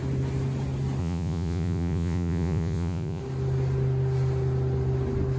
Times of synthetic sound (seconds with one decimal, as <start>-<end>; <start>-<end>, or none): 1.0-3.2